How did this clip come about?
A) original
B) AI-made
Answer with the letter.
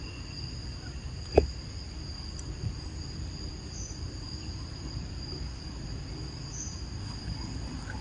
B